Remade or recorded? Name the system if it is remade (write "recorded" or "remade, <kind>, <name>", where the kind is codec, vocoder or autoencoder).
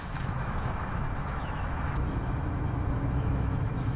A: remade, autoencoder, DAC-VAE